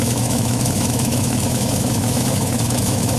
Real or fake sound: fake